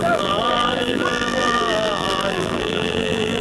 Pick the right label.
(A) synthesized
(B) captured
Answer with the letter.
A